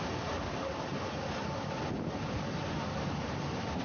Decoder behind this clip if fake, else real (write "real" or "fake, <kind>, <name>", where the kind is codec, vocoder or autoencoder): real